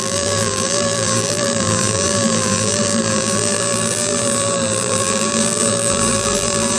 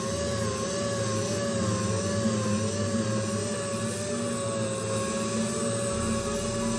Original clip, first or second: second